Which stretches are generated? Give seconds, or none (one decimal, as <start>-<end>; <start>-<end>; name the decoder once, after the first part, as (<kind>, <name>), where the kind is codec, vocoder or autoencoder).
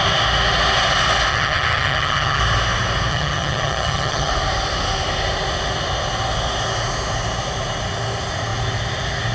1.3-2.4 (vocoder, HiFi-GAN); 3.1-4.3